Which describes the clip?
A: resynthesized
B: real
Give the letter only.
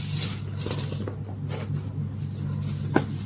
B